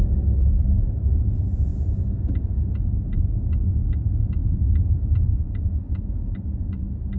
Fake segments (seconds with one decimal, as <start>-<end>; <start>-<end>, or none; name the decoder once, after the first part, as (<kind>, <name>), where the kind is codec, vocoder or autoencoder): 1.7-2.9 (vocoder, BigVGAN v2); 4.4-6.6